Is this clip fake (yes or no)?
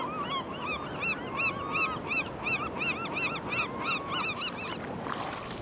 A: no